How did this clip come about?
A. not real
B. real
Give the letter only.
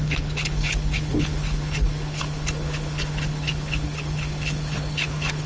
A